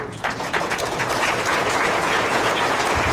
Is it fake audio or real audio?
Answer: fake